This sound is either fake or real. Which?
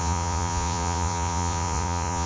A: fake